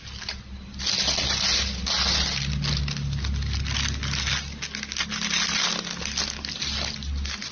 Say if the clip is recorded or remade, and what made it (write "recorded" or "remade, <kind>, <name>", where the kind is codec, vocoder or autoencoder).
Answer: recorded